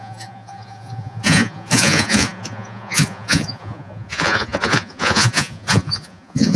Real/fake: fake